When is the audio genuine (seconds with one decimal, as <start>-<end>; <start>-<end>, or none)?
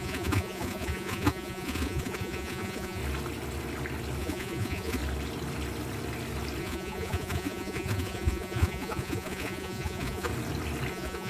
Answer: 3.0-4.2; 5.0-6.6; 10.3-10.9